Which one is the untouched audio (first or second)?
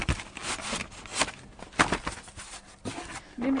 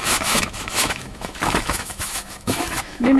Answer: first